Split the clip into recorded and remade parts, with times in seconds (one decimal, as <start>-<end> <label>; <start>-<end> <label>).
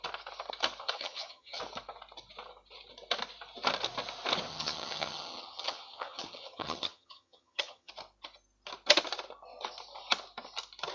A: 0.0-0.8 recorded; 0.8-1.6 remade; 1.6-4.5 recorded; 4.5-7.9 remade; 7.9-10.9 recorded